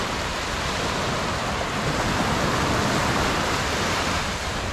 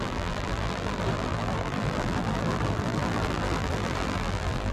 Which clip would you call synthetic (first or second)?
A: second